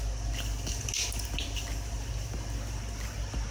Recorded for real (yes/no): yes